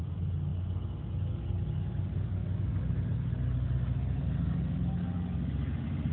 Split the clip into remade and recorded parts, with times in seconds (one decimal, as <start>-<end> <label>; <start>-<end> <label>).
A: 0.0-6.1 recorded